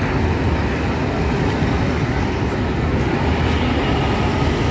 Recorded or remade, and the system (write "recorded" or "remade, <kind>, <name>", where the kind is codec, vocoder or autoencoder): recorded